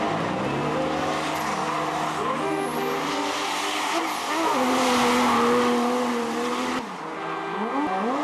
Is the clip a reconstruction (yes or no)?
no